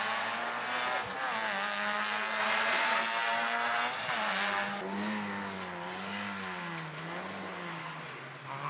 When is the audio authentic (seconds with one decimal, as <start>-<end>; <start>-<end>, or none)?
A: 0.0-2.4; 3.0-8.7